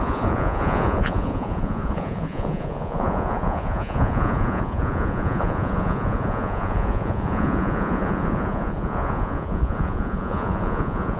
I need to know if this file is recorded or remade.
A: remade